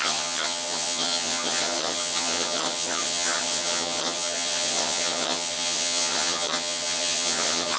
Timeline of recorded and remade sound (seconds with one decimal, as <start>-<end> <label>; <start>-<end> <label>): 0.0-7.8 remade